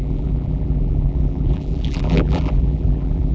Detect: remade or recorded remade